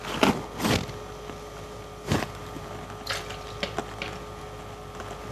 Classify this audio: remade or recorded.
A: recorded